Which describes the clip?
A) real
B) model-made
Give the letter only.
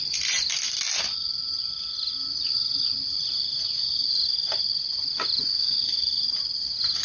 A